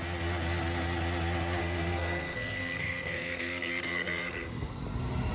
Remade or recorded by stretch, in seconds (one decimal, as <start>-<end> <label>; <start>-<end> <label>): 0.0-1.6 recorded; 1.6-4.8 remade; 4.8-5.3 recorded